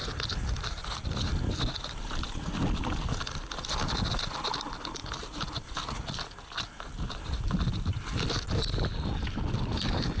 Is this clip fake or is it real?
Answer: real